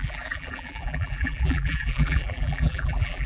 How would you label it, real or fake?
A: fake